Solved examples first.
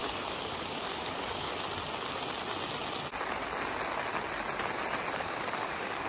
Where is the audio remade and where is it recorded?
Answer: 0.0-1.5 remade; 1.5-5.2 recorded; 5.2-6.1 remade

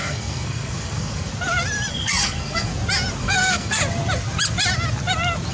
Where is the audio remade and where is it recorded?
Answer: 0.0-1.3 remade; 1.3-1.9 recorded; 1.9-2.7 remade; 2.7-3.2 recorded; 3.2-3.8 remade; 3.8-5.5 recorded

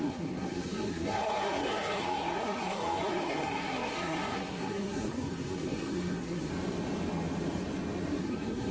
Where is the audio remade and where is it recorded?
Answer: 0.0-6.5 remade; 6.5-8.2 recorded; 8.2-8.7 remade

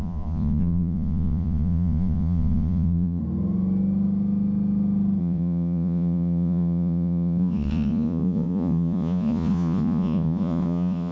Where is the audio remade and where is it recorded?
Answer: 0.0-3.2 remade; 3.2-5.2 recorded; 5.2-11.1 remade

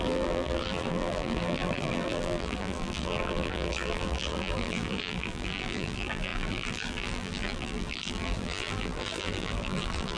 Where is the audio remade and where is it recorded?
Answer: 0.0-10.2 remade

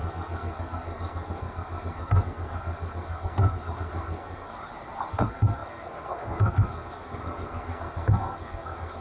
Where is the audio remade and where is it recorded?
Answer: 0.0-4.5 remade; 4.5-5.1 recorded; 5.1-9.0 remade

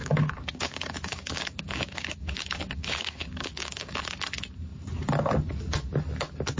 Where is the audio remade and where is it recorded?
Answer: 0.0-4.0 remade; 4.0-6.6 recorded

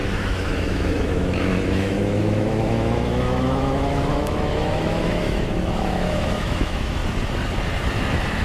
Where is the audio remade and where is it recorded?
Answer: 0.0-7.0 remade; 7.0-8.4 recorded